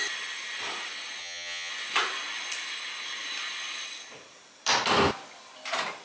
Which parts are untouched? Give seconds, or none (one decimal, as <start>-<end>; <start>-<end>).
0.0-1.2; 1.7-6.0